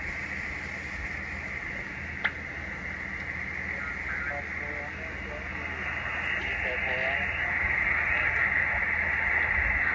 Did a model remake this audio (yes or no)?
no